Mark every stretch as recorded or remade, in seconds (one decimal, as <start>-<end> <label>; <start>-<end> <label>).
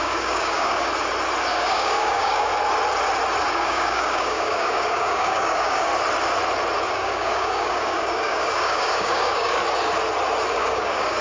0.0-0.9 remade; 0.9-1.5 recorded; 1.5-2.5 remade; 2.5-3.5 recorded; 3.5-5.9 remade; 5.9-6.9 recorded; 6.9-9.6 remade; 9.6-10.5 recorded; 10.5-11.2 remade